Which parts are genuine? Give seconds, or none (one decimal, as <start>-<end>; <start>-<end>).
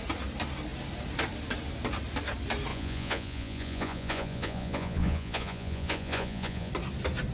0.0-2.7; 6.7-7.3